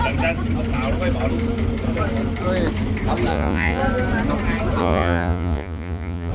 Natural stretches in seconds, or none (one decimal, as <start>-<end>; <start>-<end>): 0.0-3.3; 3.8-4.8